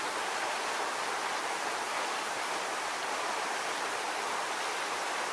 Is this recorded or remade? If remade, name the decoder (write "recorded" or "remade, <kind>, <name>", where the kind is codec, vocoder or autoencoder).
recorded